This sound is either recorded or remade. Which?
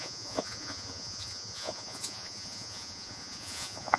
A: remade